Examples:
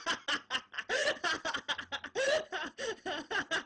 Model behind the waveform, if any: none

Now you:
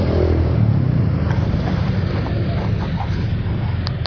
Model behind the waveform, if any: none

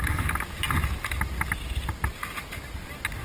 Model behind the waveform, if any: none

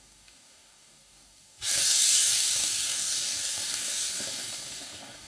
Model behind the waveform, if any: codec, DAC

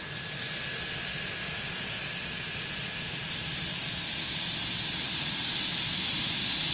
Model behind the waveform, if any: none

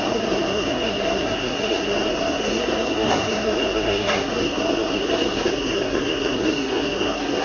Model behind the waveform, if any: codec, SNAC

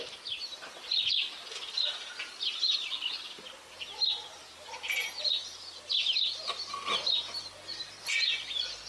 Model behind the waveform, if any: none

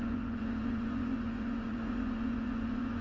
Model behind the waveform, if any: vocoder, Vocos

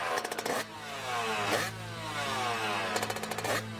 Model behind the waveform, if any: none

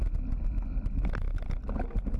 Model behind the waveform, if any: none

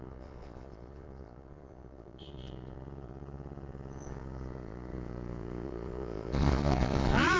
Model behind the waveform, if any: vocoder, Vocos